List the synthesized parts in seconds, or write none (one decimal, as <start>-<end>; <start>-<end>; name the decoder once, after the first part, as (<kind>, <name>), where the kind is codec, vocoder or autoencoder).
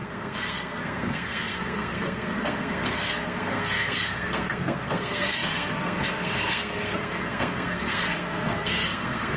0.0-9.4 (codec, SNAC)